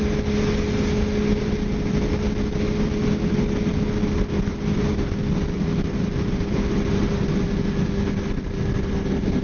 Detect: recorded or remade recorded